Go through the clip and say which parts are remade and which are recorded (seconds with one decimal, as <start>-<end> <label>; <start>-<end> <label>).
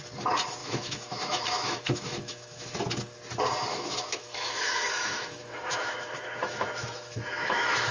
0.0-0.6 recorded; 0.6-2.8 remade; 2.8-3.7 recorded; 3.7-7.9 remade